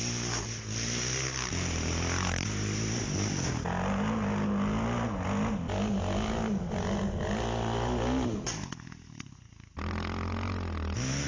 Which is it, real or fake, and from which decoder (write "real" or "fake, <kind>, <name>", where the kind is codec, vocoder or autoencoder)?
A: real